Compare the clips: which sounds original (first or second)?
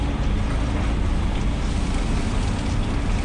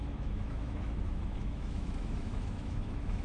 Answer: first